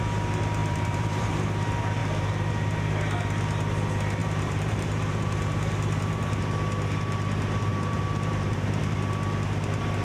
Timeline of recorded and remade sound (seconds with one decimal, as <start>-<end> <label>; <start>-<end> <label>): 0.0-0.6 recorded; 0.6-1.4 remade; 1.4-2.0 recorded; 2.0-2.5 remade; 2.5-4.2 recorded; 4.2-6.4 remade; 6.4-7.7 recorded; 7.7-8.8 remade; 8.8-10.0 recorded